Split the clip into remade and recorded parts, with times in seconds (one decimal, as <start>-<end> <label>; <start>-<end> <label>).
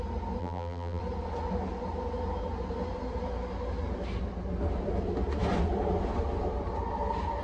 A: 0.0-0.4 recorded; 0.4-1.0 remade; 1.0-7.4 recorded